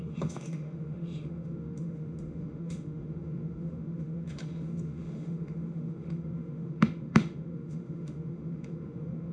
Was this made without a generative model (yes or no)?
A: no